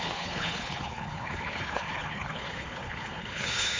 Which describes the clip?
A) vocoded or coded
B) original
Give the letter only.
A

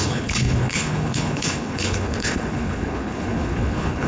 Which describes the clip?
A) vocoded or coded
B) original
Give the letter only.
A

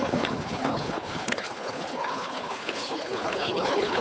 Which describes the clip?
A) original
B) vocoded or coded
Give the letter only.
B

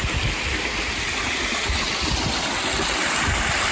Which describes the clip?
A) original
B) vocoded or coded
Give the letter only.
A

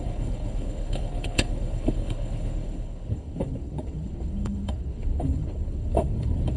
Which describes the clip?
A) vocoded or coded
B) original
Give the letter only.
A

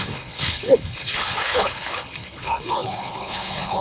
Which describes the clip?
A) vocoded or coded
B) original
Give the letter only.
A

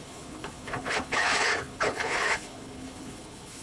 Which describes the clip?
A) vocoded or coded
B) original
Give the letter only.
A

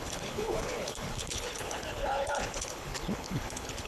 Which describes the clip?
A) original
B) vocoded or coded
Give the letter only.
B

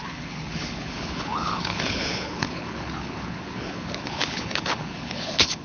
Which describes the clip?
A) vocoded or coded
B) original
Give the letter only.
A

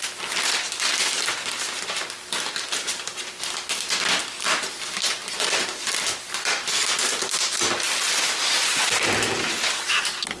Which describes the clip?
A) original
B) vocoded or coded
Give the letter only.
A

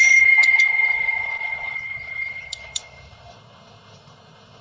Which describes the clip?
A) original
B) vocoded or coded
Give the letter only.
B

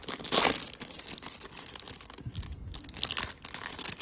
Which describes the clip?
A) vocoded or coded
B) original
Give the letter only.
B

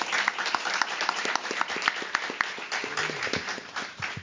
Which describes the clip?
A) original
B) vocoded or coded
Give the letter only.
A